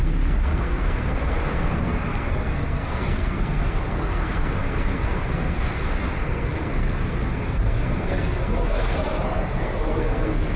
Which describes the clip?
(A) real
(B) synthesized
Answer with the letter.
B